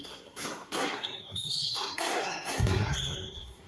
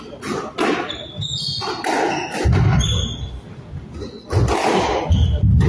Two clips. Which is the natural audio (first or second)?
second